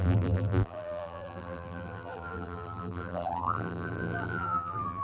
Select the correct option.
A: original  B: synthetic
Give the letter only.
B